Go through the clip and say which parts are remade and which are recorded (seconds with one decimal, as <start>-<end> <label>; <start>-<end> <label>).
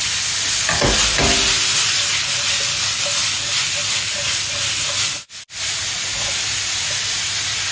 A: 0.0-7.7 recorded